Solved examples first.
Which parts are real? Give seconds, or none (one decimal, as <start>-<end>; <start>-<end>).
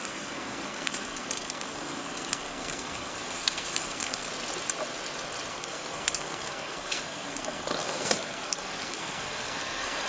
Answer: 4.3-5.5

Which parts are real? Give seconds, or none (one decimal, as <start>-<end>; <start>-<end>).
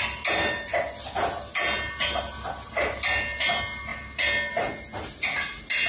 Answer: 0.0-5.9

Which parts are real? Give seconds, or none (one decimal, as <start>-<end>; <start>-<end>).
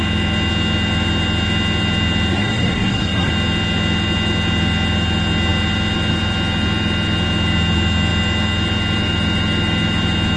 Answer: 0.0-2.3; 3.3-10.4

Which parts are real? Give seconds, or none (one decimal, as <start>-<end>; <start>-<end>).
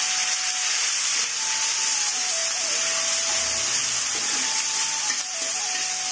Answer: 0.0-6.1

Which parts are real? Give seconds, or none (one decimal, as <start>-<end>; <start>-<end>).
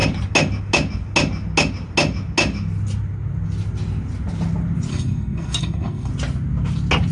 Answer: 0.0-4.9; 6.1-7.1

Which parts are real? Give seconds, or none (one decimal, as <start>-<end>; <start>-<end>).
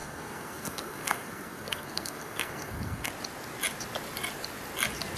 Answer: 3.1-5.2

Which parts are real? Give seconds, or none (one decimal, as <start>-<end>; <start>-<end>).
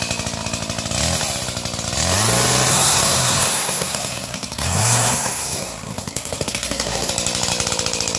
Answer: 0.0-2.7; 7.1-8.2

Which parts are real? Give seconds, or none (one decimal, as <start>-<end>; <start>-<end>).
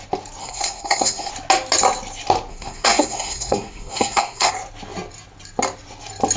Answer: 0.0-0.4; 1.3-2.5; 4.5-6.4